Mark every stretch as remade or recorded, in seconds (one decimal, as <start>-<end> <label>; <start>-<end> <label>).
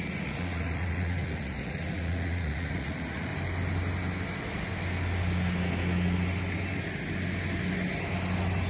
0.0-3.3 remade; 3.3-8.7 recorded